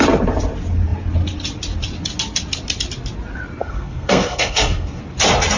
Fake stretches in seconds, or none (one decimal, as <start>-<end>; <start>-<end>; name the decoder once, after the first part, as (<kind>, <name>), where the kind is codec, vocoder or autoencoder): 3.6-5.0 (codec, SNAC)